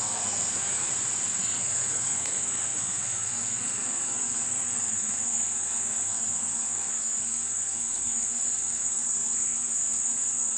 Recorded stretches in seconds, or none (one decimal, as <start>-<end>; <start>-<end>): 0.9-1.4